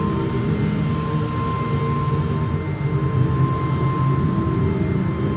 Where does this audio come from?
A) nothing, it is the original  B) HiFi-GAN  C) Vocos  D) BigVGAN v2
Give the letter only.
A